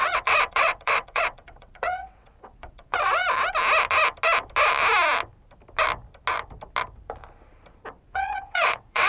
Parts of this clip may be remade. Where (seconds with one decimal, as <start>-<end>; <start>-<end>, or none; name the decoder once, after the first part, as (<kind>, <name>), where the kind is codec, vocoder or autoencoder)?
0.0-3.2 (vocoder, WaveNeXt); 8.0-9.1